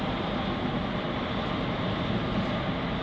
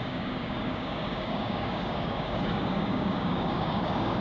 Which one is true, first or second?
first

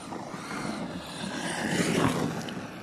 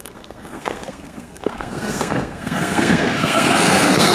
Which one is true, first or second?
first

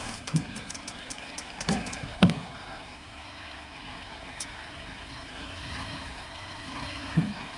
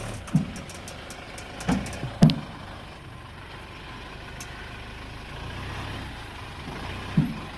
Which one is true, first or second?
second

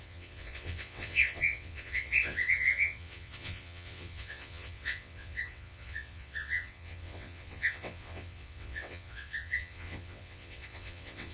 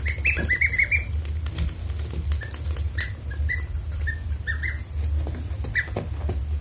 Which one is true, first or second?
second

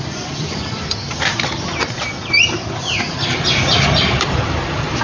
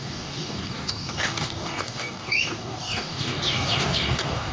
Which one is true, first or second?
first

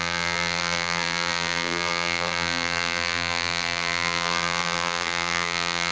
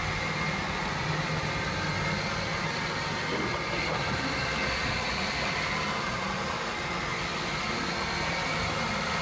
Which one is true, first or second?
second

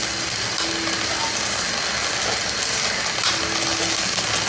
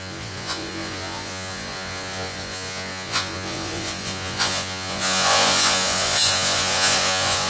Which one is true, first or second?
first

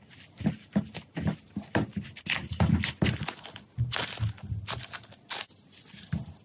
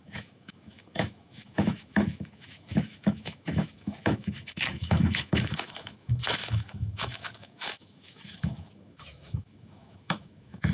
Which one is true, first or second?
first